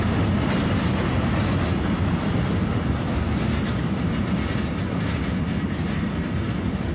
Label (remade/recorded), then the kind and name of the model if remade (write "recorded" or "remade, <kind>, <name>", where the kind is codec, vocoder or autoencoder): recorded